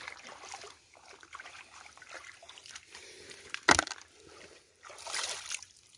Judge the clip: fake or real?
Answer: fake